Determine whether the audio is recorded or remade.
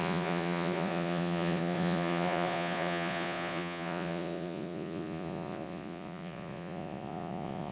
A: remade